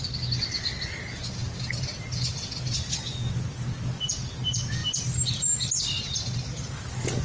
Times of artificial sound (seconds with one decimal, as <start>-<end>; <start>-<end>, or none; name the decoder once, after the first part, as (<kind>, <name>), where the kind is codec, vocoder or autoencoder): none